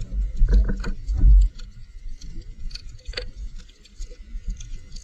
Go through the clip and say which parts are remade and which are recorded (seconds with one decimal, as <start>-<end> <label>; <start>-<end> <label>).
0.0-5.0 recorded